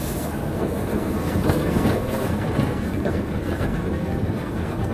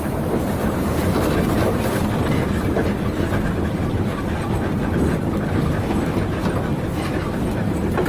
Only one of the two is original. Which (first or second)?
second